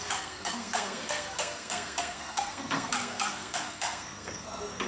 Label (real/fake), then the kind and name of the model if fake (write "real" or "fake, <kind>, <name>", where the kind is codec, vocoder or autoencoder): fake, codec, SNAC